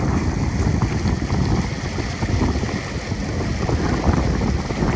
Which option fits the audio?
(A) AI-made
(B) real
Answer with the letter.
B